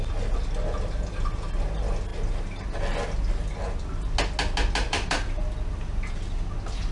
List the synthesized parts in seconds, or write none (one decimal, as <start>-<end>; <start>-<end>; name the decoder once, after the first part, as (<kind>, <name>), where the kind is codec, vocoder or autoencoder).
4.8-5.4 (vocoder, BigVGAN v2)